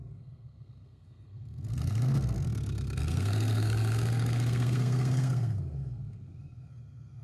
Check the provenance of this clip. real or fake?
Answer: fake